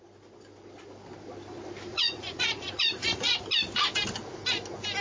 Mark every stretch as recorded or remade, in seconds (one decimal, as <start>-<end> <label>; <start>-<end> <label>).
0.0-1.9 recorded; 1.9-3.4 remade; 3.4-5.0 recorded